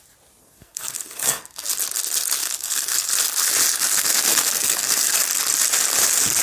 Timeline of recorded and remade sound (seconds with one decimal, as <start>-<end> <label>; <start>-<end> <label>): 0.0-0.4 recorded; 0.4-1.7 remade; 1.7-2.4 recorded; 2.4-3.1 remade; 3.1-3.7 recorded; 3.7-5.2 remade; 5.2-6.4 recorded